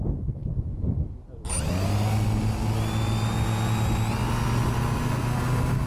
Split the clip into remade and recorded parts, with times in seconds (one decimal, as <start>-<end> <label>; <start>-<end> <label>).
0.0-5.9 recorded